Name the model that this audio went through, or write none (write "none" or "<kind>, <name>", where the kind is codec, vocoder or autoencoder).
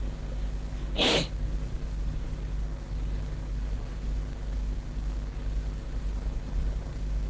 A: codec, DAC